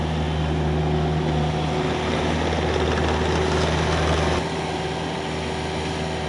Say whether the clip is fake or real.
real